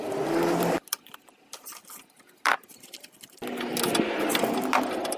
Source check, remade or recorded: recorded